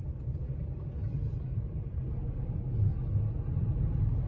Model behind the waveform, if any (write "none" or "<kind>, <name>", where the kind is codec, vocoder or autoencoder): none